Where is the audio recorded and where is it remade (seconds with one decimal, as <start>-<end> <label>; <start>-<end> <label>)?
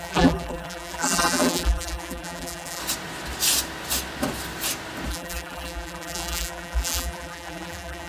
0.0-2.8 remade; 2.8-5.1 recorded; 5.1-8.1 remade